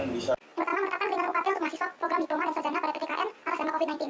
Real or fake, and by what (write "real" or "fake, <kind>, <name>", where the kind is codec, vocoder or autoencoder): real